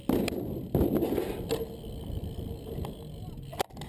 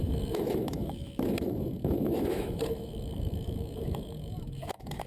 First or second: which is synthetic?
second